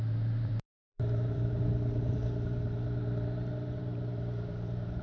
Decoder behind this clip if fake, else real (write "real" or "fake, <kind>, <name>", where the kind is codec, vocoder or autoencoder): fake, vocoder, BigVGAN v2